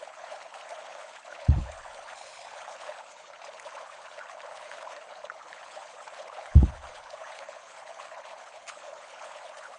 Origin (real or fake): fake